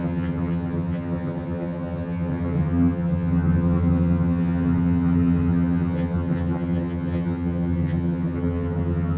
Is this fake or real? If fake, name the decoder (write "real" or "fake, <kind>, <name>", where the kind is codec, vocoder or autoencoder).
fake, vocoder, HiFi-GAN